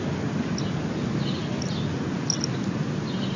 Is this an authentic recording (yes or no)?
yes